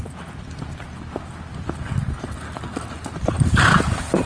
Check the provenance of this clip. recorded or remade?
recorded